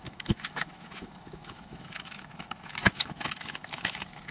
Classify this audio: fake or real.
fake